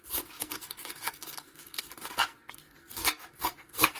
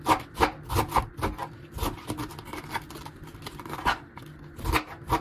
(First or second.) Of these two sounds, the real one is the second